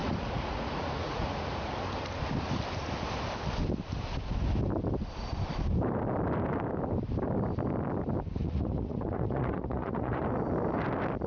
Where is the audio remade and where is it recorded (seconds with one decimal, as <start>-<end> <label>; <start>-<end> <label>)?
0.0-1.7 remade; 1.7-8.4 recorded; 8.4-10.2 remade; 10.2-11.3 recorded